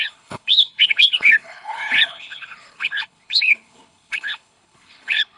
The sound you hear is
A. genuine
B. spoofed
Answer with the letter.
B